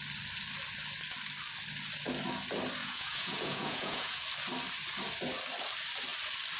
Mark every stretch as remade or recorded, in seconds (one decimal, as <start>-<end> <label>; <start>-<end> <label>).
0.0-2.8 recorded; 2.8-4.2 remade; 4.2-6.6 recorded